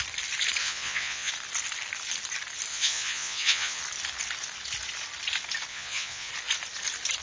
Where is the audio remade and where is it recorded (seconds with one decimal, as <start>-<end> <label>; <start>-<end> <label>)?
0.0-0.6 recorded; 0.6-1.3 remade; 1.3-2.7 recorded; 2.7-3.8 remade; 3.8-5.7 recorded; 5.7-6.3 remade; 6.3-7.2 recorded